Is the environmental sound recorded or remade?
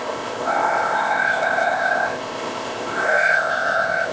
remade